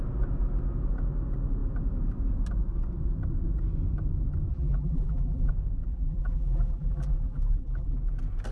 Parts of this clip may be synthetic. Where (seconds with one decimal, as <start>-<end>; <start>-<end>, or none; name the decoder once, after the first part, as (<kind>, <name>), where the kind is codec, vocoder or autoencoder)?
4.5-5.5 (vocoder, BigVGAN v2); 5.9-8.0